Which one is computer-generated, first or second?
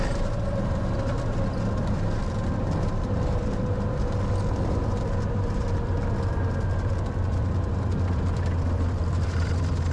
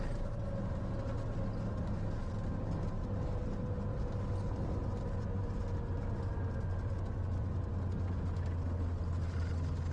first